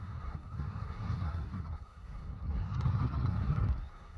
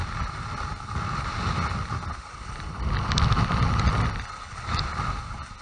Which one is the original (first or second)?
second